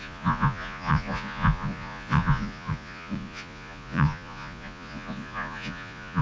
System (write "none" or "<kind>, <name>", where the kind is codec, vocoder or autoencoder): vocoder, Vocos